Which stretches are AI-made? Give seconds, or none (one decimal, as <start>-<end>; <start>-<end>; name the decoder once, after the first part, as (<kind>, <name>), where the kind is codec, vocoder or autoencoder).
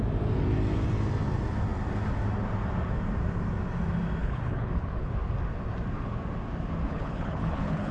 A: 4.2-5.1 (codec, HILCodec); 6.9-7.9